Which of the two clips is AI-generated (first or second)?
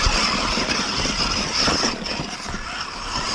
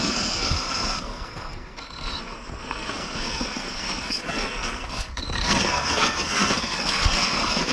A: second